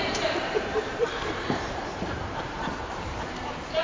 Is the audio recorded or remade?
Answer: remade